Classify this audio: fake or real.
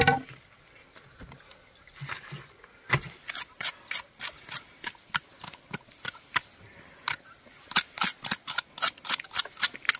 real